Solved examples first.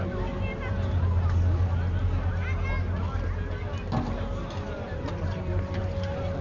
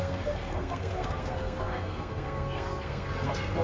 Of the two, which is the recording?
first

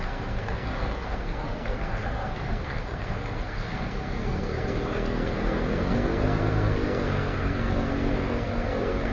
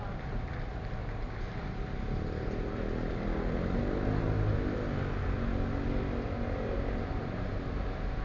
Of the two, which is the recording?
second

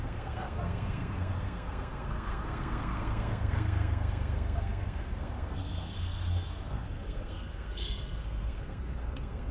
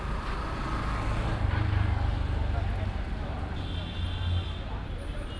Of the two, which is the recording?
second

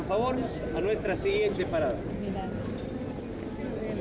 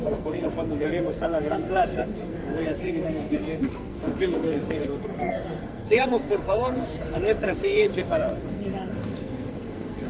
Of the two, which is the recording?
first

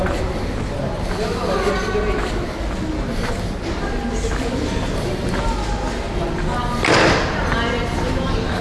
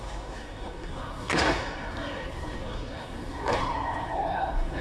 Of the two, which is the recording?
first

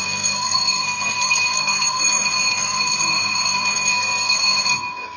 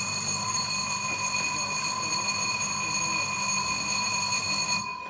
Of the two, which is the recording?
second